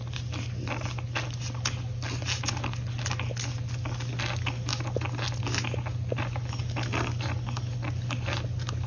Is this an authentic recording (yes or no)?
yes